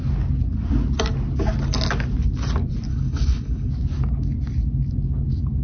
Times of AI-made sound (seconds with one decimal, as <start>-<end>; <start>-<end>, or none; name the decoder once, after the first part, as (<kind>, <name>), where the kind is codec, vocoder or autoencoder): 2.9-3.7 (codec, HILCodec)